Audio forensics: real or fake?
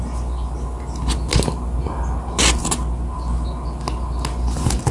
real